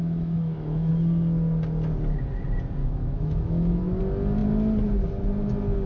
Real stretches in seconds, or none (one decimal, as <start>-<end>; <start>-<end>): 0.9-2.8; 4.0-5.9